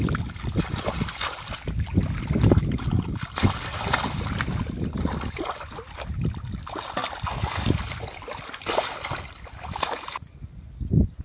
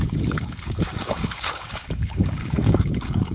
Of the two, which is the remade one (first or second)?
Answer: second